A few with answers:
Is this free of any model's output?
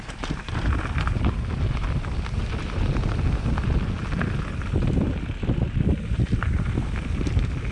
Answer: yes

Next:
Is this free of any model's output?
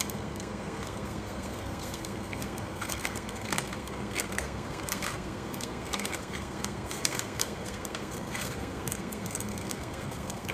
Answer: no